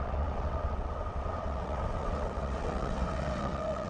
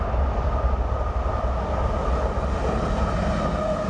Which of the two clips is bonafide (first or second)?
second